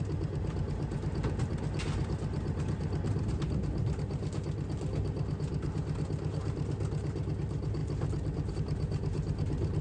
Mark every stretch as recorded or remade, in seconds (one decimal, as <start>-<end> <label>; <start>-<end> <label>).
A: 0.0-9.8 recorded